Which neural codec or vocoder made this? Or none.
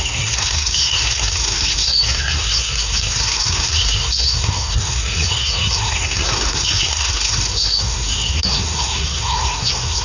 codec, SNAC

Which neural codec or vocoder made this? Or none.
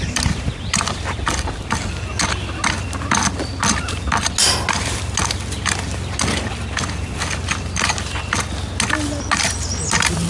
none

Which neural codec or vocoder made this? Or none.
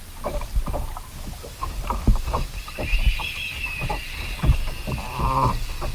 none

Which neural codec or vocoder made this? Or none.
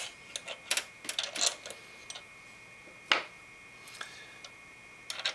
none